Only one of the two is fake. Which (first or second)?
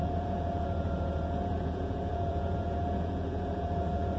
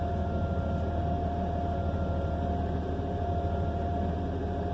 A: first